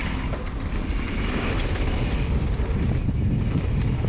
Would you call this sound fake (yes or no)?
yes